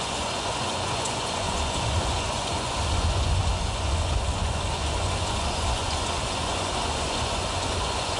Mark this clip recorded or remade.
remade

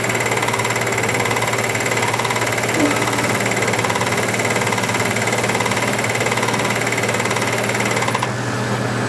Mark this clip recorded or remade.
recorded